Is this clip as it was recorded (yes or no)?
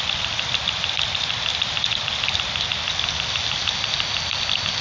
yes